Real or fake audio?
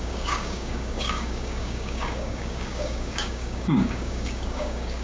fake